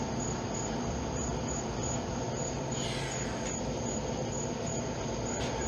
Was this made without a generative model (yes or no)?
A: yes